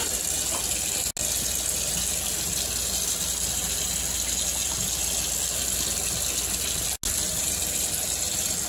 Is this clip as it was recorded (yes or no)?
yes